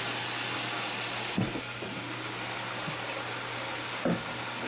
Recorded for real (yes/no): yes